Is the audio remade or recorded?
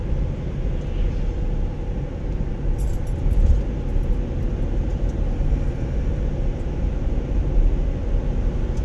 recorded